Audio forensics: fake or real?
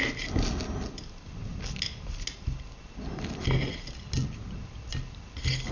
real